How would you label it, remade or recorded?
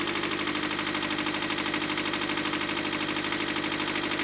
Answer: recorded